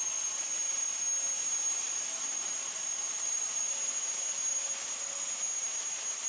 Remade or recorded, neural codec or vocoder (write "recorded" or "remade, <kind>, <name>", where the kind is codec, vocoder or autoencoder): recorded